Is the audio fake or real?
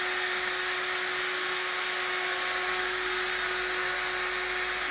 real